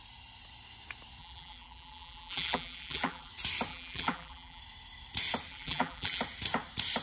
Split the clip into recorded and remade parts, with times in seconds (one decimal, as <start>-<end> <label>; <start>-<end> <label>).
0.0-1.2 recorded; 1.2-3.3 remade; 3.3-3.7 recorded; 3.7-4.6 remade; 4.6-5.5 recorded; 5.5-6.2 remade; 6.2-7.0 recorded